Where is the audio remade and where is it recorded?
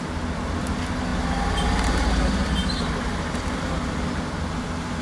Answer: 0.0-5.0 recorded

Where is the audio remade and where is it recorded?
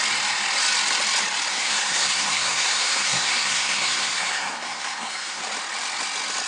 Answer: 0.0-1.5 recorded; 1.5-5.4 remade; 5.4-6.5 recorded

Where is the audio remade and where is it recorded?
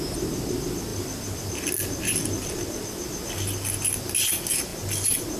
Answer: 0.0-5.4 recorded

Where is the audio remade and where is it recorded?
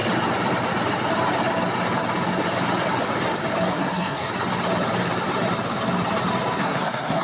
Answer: 0.0-3.7 recorded; 3.7-4.3 remade; 4.3-6.6 recorded; 6.6-7.2 remade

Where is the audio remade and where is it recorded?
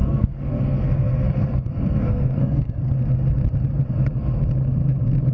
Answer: 0.0-2.9 remade; 2.9-5.3 recorded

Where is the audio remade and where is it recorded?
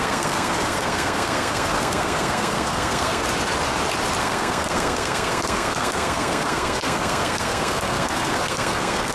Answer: 0.0-3.2 remade; 3.2-4.2 recorded; 4.2-9.1 remade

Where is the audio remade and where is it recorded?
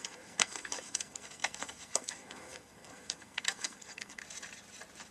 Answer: 0.0-4.2 remade; 4.2-5.1 recorded